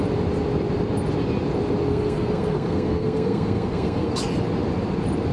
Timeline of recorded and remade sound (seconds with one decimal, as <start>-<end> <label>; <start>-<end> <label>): 0.0-1.9 recorded; 1.9-4.1 remade; 4.1-5.3 recorded